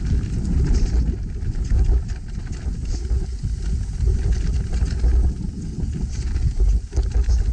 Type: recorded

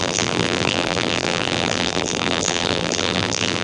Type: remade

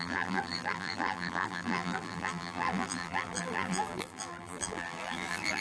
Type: remade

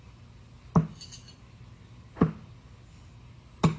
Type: recorded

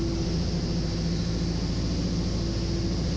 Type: recorded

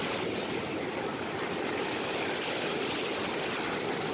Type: recorded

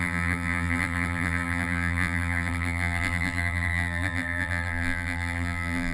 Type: remade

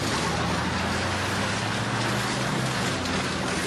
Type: recorded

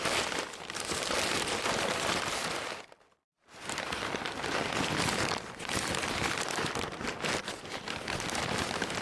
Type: remade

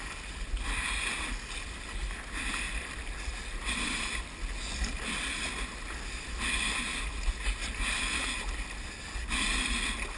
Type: recorded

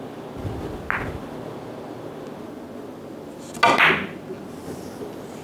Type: recorded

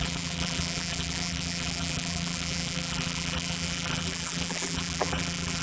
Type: remade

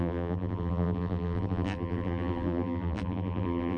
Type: remade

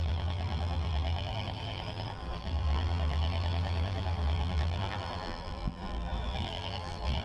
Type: remade